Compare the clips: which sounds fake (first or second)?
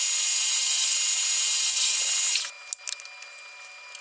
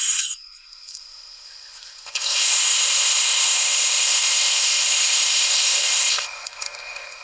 second